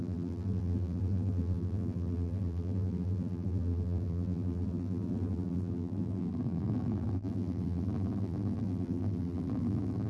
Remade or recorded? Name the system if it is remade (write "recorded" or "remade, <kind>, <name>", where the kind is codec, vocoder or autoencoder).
remade, vocoder, BigVGAN v2